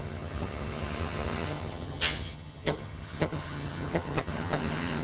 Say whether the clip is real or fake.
fake